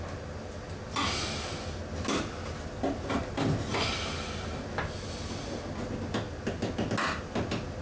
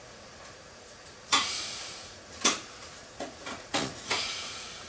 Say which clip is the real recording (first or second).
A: first